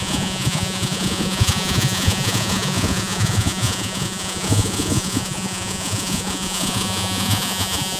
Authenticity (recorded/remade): remade